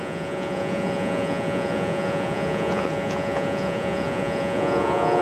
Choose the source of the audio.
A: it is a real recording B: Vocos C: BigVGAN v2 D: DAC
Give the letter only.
B